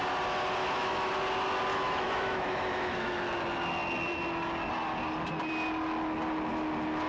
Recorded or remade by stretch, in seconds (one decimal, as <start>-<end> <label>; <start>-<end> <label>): 0.0-0.6 recorded; 0.6-1.1 remade; 1.1-1.7 recorded; 1.7-3.2 remade; 3.2-7.1 recorded